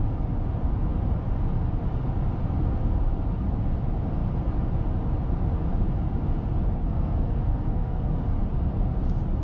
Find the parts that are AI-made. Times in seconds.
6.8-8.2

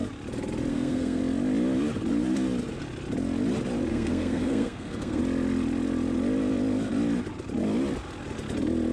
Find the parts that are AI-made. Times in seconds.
0.7-1.2; 3.9-5.2